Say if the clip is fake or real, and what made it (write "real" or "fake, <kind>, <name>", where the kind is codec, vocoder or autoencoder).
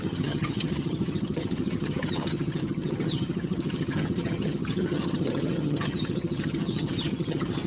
fake, vocoder, HiFi-GAN